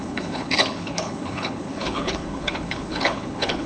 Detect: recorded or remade remade